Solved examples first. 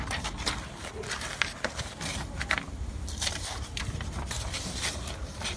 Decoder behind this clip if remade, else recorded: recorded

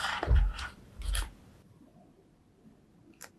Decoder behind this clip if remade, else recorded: remade, vocoder, BigVGAN v2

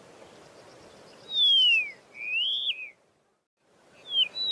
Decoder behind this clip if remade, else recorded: recorded